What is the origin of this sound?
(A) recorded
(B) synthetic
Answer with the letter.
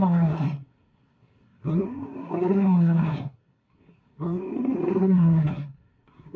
B